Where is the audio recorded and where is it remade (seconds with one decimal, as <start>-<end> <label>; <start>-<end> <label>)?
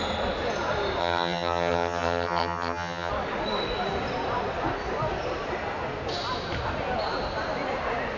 0.0-1.0 recorded; 1.0-3.1 remade; 3.1-8.2 recorded